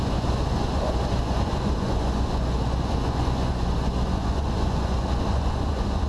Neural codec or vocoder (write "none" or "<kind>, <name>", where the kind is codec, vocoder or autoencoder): vocoder, Vocos